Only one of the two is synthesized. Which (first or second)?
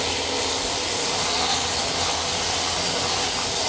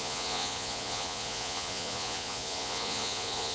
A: second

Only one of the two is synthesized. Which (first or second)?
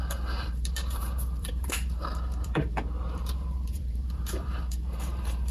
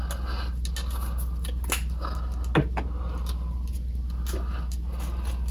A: first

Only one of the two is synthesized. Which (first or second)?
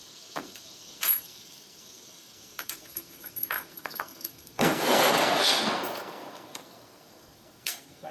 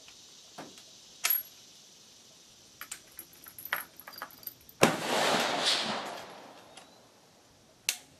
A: first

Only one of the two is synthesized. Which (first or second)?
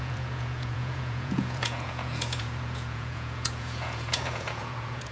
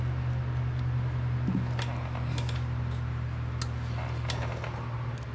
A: first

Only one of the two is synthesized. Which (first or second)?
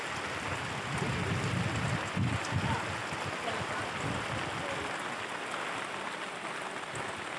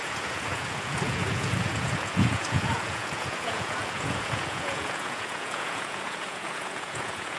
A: second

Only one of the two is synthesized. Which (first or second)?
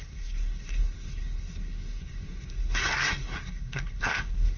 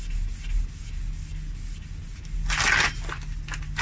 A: first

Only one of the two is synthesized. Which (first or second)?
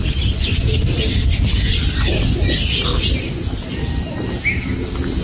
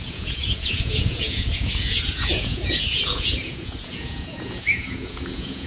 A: second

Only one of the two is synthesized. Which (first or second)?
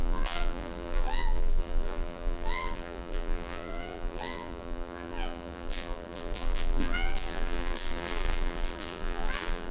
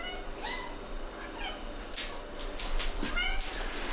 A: first